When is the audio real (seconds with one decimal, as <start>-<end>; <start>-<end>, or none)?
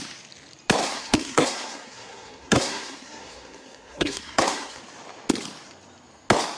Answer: 0.0-0.8; 4.8-6.6